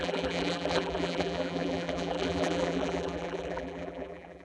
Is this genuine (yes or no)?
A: no